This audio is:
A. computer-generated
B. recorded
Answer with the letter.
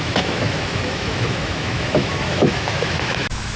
A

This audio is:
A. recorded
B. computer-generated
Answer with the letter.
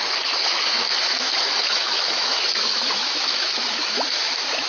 B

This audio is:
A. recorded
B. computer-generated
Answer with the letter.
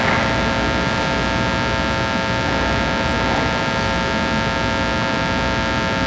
A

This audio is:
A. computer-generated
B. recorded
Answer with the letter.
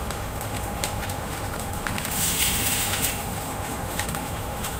A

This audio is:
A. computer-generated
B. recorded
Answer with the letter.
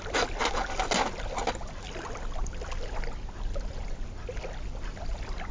B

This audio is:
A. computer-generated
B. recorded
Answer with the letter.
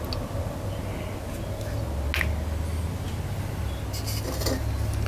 B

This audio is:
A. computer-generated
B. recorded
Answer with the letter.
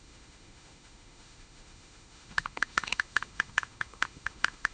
A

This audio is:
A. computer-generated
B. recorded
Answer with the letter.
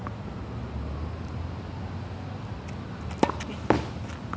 B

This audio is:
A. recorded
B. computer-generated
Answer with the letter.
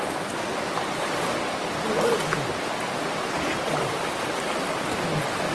A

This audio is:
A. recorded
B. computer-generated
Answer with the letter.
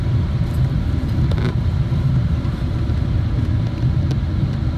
A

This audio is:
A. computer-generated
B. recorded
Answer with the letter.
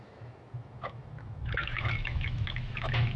A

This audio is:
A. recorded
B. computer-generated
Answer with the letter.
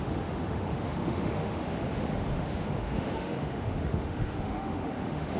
B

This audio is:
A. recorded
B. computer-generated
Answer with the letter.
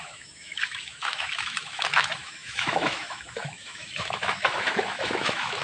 B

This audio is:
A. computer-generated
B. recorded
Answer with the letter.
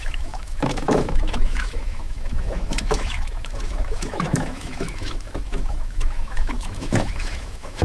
A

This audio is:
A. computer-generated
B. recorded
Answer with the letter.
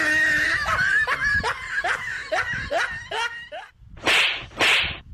B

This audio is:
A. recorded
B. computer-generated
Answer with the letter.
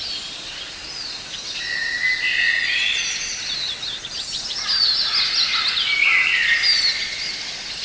A